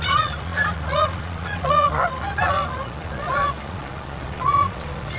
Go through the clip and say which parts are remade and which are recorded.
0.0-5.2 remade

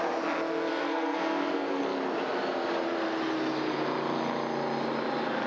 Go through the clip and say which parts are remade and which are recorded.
0.0-0.7 recorded; 0.7-1.8 remade; 1.8-5.5 recorded

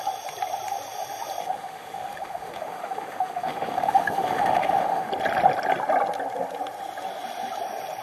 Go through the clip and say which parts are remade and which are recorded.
0.0-1.4 recorded; 1.4-5.1 remade; 5.1-8.0 recorded

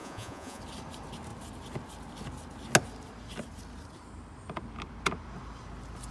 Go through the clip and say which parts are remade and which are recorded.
0.0-0.6 remade; 0.6-6.1 recorded

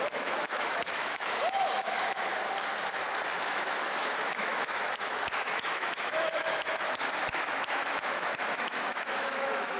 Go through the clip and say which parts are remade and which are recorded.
0.0-2.3 remade; 2.3-3.4 recorded; 3.4-9.8 remade